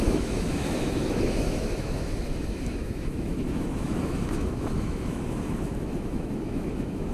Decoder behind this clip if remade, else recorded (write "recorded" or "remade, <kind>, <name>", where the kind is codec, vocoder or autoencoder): remade, autoencoder, DAC-VAE